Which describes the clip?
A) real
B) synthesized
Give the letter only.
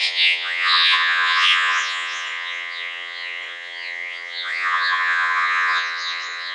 B